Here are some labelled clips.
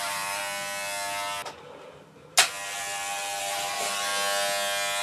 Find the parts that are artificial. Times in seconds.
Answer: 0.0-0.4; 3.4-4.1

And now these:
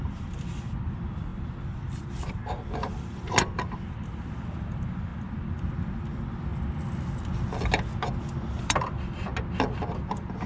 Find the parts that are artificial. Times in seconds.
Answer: 0.0-6.5; 8.6-9.3

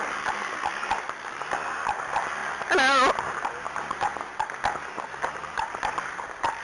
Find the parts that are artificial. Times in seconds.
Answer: 0.0-2.4; 3.5-4.3; 5.4-6.6

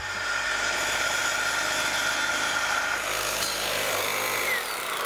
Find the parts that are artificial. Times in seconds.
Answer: 0.0-1.2; 2.3-4.1